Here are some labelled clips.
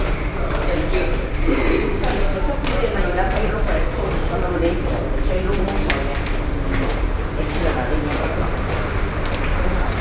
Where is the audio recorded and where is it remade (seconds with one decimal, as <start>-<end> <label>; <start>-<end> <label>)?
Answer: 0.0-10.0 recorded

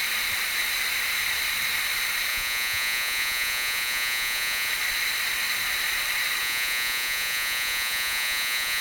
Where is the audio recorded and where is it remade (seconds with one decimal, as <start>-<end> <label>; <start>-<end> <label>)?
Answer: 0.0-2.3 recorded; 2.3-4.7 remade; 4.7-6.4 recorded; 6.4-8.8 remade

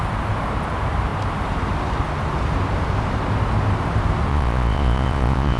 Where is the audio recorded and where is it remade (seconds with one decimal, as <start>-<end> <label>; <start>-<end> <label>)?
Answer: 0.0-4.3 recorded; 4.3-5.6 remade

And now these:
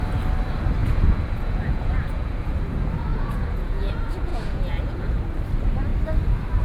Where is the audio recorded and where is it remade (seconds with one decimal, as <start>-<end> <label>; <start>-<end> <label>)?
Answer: 0.0-0.8 recorded; 0.8-2.6 remade; 2.6-3.1 recorded; 3.1-3.9 remade; 3.9-4.3 recorded; 4.3-5.0 remade; 5.0-6.6 recorded

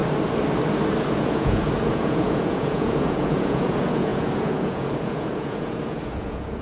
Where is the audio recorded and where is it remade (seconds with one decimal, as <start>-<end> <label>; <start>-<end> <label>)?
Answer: 0.0-1.1 recorded; 1.1-6.6 remade

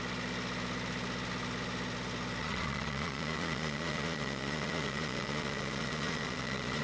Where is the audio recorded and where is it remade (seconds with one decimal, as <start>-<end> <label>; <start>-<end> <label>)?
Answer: 0.0-2.4 recorded; 2.4-6.8 remade

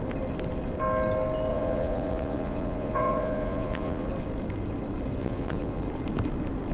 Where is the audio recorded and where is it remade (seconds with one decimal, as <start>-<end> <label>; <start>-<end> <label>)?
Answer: 0.0-1.5 recorded; 1.5-4.1 remade; 4.1-5.2 recorded; 5.2-5.8 remade; 5.8-6.7 recorded